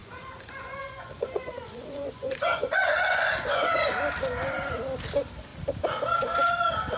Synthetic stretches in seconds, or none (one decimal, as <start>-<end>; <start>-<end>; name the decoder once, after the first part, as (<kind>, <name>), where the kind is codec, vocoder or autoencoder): 0.0-3.8 (vocoder, Vocos)